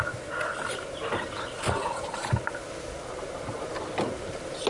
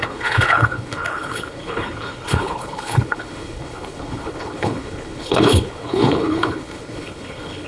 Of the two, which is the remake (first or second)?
second